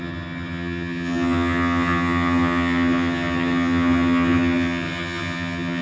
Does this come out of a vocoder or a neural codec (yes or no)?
yes